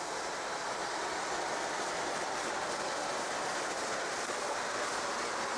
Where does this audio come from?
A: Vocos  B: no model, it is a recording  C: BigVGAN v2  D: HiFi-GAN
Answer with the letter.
B